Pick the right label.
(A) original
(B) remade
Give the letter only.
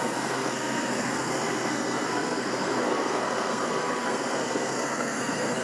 B